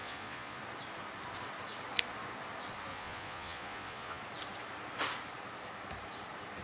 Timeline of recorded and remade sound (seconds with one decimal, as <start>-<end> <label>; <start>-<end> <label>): 0.0-0.6 remade; 0.6-2.9 recorded; 2.9-4.2 remade; 4.2-6.6 recorded